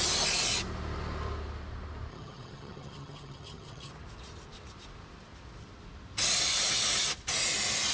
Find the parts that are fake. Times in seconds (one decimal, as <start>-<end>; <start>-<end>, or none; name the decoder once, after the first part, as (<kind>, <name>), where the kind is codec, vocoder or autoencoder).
2.1-3.9 (vocoder, HiFi-GAN)